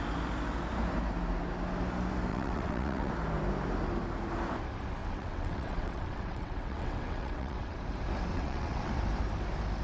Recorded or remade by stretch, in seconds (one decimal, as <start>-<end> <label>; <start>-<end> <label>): 0.0-2.3 recorded; 2.3-3.1 remade; 3.1-5.0 recorded; 5.0-7.8 remade; 7.8-8.3 recorded; 8.3-8.9 remade; 8.9-9.8 recorded